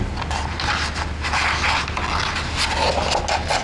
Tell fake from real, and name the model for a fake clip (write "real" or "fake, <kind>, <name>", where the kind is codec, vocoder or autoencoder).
real